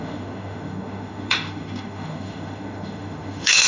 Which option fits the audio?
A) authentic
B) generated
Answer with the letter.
B